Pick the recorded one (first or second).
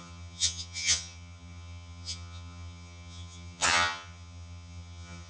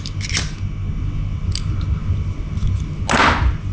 second